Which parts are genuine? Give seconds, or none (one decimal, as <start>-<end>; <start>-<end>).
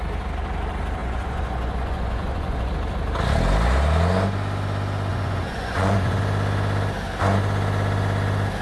0.0-1.0; 2.7-5.1; 6.2-8.6